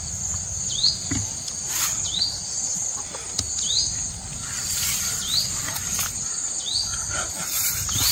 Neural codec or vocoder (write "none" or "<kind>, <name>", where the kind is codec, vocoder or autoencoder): none